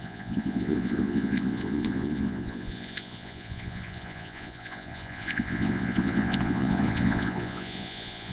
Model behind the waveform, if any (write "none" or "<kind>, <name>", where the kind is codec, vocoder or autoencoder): vocoder, Vocos